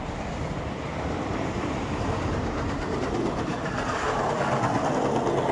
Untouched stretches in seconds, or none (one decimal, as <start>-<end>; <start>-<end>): 0.0-0.9; 4.2-5.5